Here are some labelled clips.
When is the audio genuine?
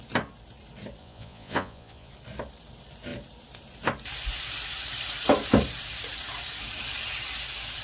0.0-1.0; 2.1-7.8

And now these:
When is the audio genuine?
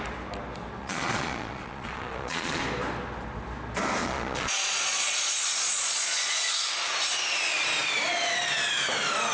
0.0-0.8; 2.6-4.0; 6.5-9.3